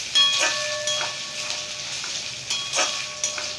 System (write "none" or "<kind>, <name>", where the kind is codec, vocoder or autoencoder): none